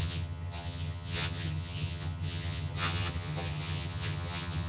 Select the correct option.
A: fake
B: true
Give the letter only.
A